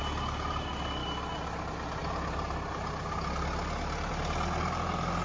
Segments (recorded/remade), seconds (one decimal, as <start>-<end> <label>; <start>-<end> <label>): 0.0-5.2 recorded